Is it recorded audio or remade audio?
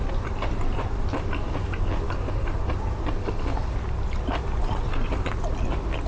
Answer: recorded